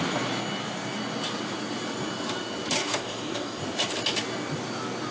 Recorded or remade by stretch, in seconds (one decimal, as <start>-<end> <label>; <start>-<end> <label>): 0.0-2.8 recorded; 2.8-3.6 remade; 3.6-5.1 recorded